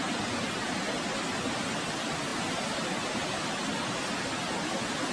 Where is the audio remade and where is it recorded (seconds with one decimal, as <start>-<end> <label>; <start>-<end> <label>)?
0.0-5.1 recorded